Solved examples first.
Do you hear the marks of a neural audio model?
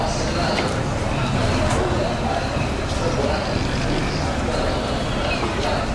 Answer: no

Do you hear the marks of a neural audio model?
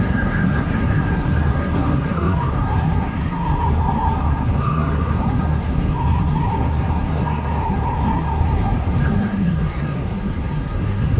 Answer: yes